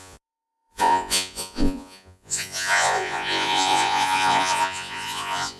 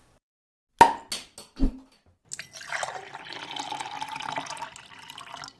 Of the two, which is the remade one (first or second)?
first